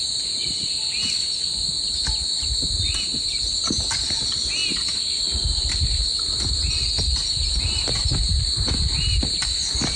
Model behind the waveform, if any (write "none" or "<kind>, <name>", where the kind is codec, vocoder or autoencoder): none